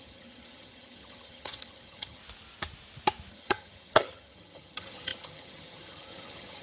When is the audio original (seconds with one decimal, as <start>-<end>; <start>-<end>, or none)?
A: 2.2-3.3